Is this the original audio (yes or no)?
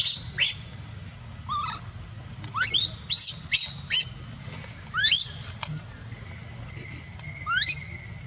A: yes